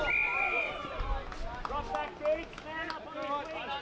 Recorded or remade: recorded